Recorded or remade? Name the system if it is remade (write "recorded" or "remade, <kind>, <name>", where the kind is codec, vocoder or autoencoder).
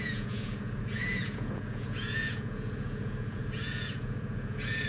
remade, vocoder, Vocos